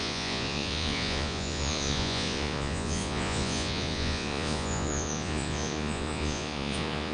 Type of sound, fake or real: fake